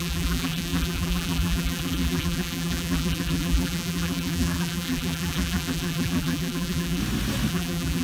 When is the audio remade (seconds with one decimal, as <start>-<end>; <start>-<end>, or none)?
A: 0.0-7.0; 7.5-8.0